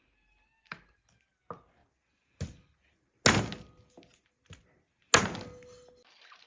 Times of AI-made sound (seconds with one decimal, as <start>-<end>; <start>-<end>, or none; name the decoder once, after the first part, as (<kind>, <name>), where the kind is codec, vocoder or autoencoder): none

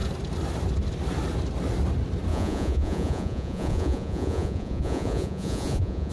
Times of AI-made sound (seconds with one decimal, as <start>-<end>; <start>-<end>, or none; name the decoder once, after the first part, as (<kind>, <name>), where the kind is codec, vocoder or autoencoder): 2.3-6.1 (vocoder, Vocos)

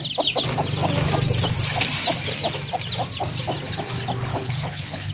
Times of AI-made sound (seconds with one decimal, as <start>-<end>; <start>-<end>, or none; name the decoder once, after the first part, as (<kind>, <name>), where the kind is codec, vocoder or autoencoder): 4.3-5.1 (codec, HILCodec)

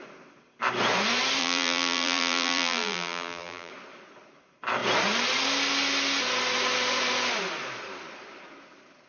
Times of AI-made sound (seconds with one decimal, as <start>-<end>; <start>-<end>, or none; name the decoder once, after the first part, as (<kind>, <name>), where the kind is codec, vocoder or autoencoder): 1.4-3.7 (vocoder, BigVGAN v2)

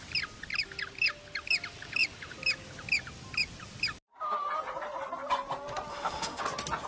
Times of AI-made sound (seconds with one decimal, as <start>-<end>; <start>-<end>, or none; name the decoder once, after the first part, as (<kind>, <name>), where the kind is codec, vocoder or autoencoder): 5.9-6.4 (autoencoder, DAC-VAE)

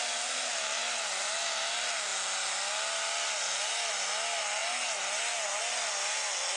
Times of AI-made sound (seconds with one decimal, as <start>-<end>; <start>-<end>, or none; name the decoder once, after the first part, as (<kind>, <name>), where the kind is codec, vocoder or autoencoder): none